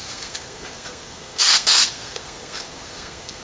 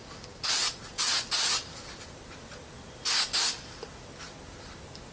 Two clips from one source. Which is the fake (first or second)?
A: first